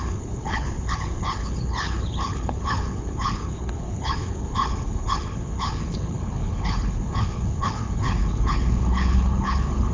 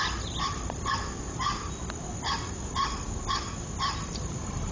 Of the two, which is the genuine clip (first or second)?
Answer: second